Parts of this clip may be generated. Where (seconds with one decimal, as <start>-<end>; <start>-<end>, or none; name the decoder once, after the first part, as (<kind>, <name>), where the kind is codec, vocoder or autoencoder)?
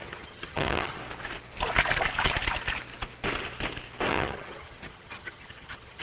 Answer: 0.0-1.0 (vocoder, HiFi-GAN); 4.1-6.0